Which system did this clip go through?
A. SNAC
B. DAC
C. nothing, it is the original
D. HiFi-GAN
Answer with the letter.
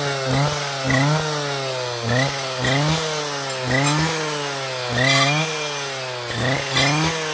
C